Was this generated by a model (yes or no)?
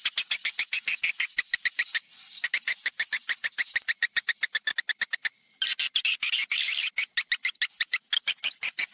no